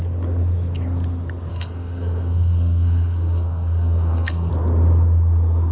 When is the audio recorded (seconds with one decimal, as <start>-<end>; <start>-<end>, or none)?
0.0-1.5; 4.5-5.7